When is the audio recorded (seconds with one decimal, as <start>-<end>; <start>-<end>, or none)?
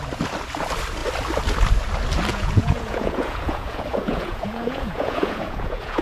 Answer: 0.0-2.3